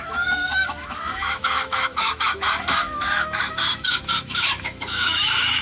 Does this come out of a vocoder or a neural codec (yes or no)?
yes